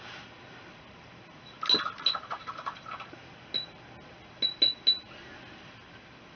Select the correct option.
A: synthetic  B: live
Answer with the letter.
B